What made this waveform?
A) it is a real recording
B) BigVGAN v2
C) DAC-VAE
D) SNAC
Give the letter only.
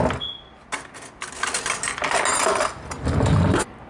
A